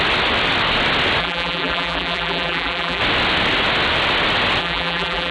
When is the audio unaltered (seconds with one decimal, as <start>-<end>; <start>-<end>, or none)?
0.0-1.2; 3.0-4.6